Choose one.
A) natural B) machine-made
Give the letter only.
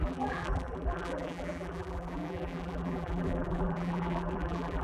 B